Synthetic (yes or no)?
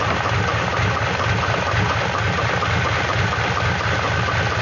no